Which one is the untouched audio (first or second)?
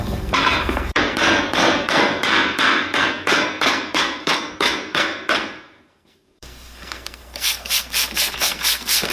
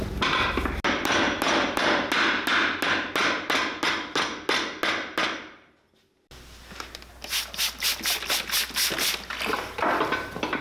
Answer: second